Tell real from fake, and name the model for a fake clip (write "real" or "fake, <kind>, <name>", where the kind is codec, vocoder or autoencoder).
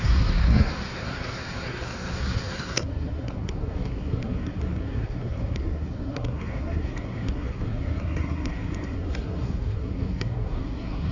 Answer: fake, codec, SNAC